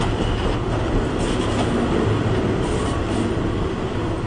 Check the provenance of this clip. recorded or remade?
recorded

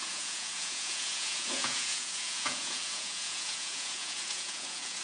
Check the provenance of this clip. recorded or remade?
remade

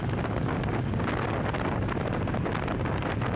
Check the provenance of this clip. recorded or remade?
recorded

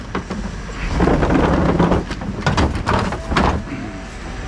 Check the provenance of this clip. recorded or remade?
recorded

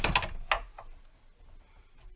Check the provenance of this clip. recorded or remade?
recorded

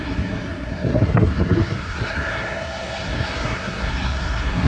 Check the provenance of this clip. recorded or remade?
remade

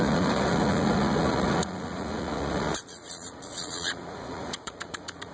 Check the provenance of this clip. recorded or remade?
remade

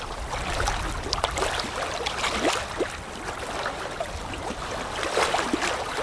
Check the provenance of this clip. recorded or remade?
recorded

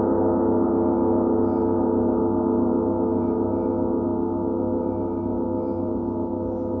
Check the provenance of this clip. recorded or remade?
recorded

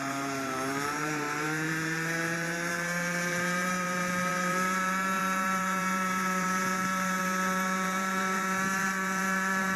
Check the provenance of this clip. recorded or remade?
remade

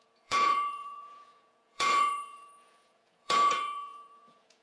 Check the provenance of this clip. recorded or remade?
remade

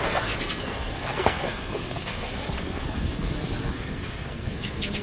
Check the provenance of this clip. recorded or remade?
remade